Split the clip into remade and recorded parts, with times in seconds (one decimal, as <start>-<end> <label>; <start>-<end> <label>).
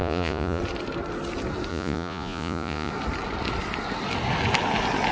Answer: 0.0-0.6 remade; 0.6-1.7 recorded; 1.7-2.9 remade; 2.9-5.1 recorded